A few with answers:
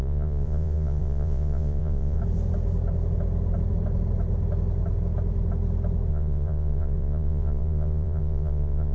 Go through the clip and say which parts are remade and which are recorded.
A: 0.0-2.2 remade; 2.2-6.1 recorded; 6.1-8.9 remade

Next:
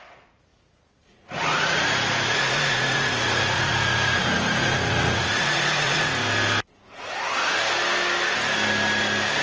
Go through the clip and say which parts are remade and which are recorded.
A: 0.0-6.2 remade; 6.2-9.4 recorded

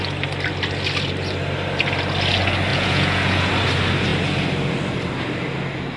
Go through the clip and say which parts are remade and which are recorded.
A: 0.0-2.7 recorded; 2.7-3.5 remade; 3.5-6.0 recorded

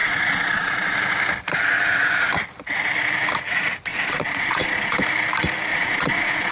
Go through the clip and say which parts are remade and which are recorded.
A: 0.0-1.0 remade; 1.0-3.9 recorded; 3.9-5.0 remade; 5.0-5.7 recorded; 5.7-6.5 remade